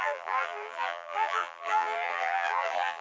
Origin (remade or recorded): remade